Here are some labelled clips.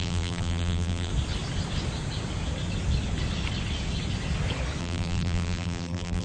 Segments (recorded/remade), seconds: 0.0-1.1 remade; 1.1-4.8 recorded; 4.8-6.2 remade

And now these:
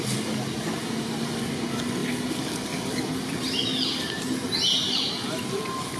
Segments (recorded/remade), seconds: 0.0-6.0 recorded